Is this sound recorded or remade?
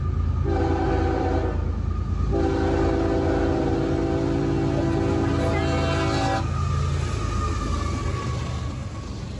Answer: recorded